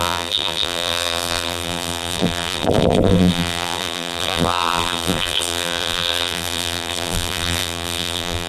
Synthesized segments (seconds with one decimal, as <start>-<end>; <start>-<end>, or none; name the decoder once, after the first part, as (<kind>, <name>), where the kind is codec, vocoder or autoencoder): 0.0-8.5 (vocoder, BigVGAN v2)